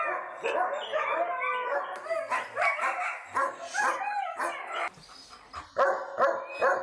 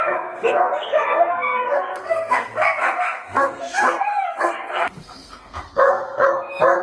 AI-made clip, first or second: second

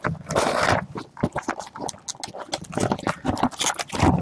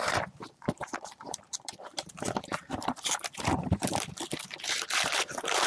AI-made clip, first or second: second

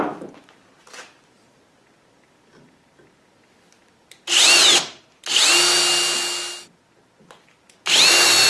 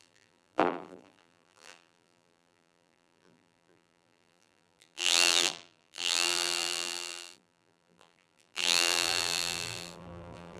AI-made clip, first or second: second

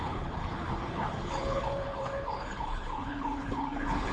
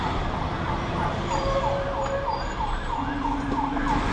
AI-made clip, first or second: first